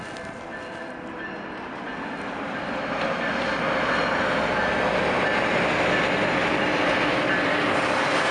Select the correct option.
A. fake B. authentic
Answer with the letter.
B